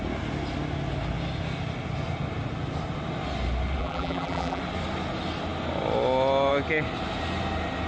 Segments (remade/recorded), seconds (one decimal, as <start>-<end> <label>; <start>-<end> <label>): 0.0-3.8 recorded; 3.8-4.6 remade; 4.6-7.9 recorded